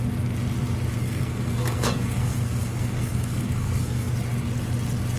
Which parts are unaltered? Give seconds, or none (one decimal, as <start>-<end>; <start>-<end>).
0.0-1.0; 4.1-5.2